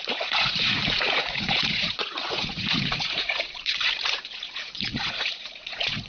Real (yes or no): no